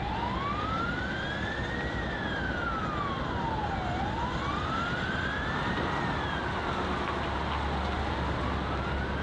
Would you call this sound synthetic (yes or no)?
no